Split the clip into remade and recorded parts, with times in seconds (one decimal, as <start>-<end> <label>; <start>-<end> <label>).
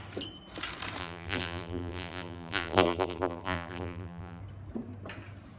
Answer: 0.0-1.0 recorded; 1.0-4.4 remade; 4.4-5.6 recorded